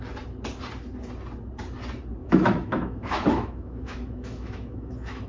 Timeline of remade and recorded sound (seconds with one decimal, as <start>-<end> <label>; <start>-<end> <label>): 0.0-2.2 recorded; 2.2-5.3 remade